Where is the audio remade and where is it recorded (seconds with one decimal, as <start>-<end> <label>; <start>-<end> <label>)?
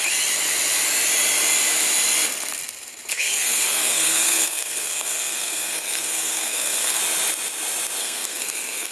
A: 0.0-3.1 recorded; 3.1-7.0 remade; 7.0-8.0 recorded; 8.0-8.9 remade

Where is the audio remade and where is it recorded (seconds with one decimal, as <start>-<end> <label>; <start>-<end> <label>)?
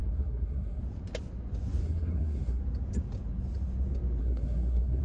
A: 0.0-0.8 remade; 0.8-1.8 recorded; 1.8-2.6 remade; 2.6-4.2 recorded; 4.2-5.0 remade